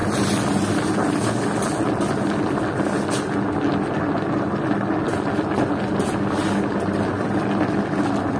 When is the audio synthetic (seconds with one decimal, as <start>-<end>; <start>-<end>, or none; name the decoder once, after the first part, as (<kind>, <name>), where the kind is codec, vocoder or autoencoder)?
none